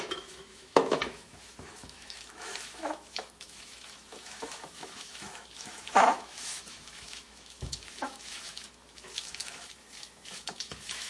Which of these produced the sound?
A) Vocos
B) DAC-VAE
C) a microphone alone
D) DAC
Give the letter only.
B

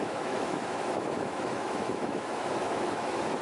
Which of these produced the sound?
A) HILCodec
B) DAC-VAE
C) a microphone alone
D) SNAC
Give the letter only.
B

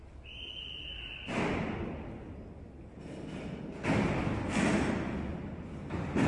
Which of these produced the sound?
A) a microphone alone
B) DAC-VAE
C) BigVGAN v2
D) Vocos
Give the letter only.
A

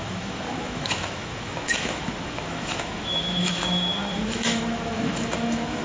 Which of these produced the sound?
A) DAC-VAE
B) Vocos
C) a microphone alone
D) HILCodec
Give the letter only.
A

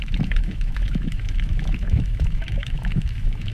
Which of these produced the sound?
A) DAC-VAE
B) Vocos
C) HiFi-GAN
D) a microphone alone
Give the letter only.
A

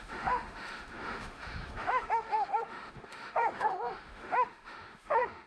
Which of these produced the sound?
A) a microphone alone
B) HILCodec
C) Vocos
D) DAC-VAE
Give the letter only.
D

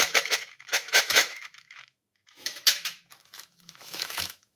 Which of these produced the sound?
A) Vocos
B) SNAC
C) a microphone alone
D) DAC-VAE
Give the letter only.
D